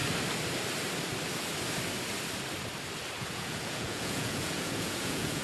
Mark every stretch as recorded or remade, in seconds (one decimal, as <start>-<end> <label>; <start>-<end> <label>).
0.0-3.2 recorded; 3.2-5.4 remade